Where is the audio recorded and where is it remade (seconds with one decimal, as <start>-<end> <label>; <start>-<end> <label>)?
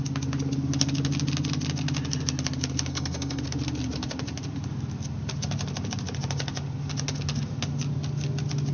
0.0-2.9 recorded; 2.9-3.4 remade; 3.4-8.7 recorded